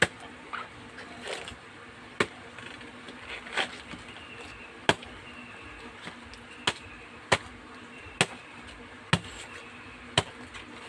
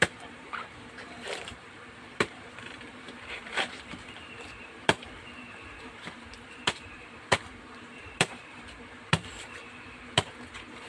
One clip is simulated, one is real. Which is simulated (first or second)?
second